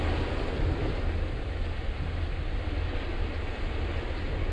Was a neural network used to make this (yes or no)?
no